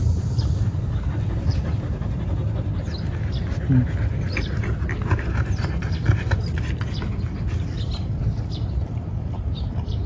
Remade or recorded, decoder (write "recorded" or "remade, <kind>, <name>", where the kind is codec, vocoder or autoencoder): recorded